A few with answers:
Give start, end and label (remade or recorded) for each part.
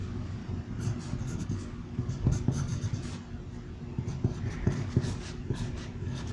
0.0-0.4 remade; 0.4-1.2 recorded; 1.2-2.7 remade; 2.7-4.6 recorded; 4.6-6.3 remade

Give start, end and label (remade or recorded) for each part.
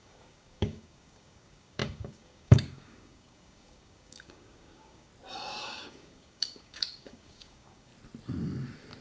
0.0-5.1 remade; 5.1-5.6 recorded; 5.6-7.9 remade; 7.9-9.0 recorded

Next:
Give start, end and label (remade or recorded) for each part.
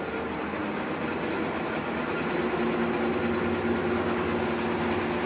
0.0-5.3 recorded